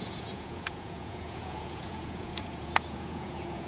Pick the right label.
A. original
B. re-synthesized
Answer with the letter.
B